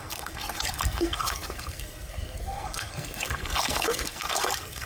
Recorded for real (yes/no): no